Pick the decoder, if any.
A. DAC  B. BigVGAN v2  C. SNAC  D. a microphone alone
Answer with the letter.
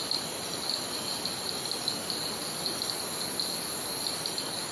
D